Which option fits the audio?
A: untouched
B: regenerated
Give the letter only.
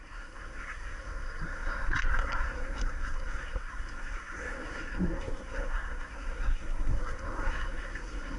B